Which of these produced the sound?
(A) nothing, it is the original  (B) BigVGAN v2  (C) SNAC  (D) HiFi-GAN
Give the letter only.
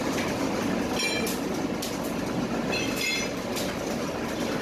A